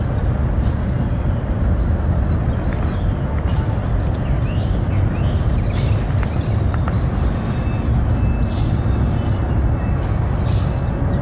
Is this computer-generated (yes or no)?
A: no